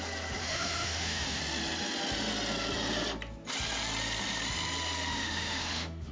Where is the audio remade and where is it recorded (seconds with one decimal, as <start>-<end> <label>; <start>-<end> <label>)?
0.0-0.4 recorded; 0.4-1.4 remade; 1.4-5.1 recorded; 5.1-6.1 remade